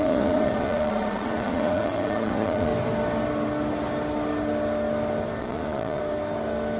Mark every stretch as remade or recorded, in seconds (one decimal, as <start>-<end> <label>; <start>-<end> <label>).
0.0-2.7 remade; 2.7-5.4 recorded; 5.4-6.0 remade; 6.0-6.8 recorded